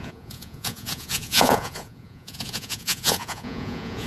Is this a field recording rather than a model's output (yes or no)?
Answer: no